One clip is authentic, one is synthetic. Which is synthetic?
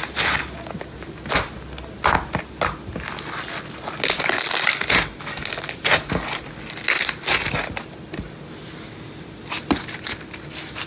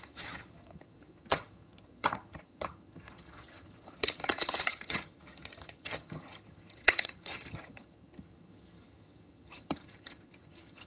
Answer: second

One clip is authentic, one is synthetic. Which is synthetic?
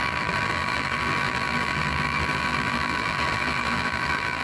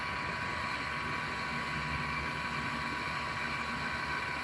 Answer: first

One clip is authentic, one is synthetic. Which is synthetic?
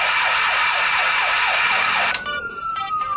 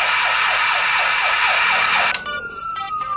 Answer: first